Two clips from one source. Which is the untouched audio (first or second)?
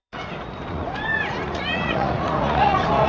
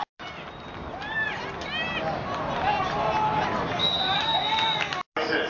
second